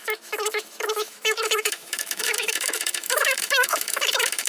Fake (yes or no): yes